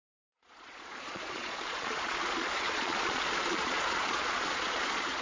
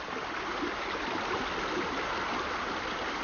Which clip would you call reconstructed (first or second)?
first